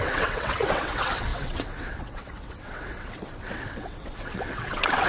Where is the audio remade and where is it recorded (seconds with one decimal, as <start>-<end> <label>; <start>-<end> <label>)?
0.0-5.1 remade

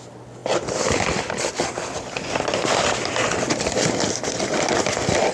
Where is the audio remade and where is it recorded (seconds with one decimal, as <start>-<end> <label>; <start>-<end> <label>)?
0.0-5.3 recorded

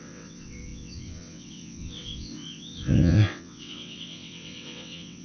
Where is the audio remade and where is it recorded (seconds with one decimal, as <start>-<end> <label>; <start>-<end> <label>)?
0.0-5.2 remade

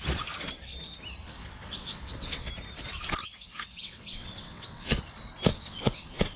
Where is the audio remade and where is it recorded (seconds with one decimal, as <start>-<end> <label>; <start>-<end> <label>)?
0.0-1.4 recorded; 1.4-2.5 remade; 2.5-3.2 recorded; 3.2-5.0 remade; 5.0-5.5 recorded; 5.5-6.4 remade